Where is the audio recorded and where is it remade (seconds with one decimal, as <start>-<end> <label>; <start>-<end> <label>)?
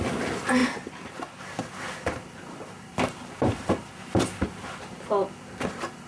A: 0.0-6.1 recorded